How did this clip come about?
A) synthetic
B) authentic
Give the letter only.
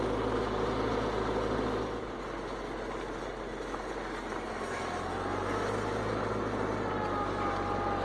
B